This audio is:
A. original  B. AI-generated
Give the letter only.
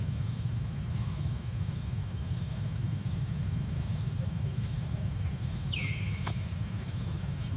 B